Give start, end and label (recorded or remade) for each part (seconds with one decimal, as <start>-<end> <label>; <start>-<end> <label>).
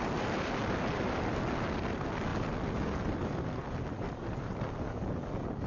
0.0-5.7 recorded